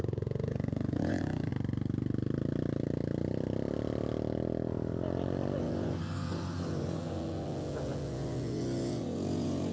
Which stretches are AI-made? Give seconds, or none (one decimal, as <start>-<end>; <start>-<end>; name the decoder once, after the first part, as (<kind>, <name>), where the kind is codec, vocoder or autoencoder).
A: 0.0-1.5 (vocoder, Vocos); 5.6-9.7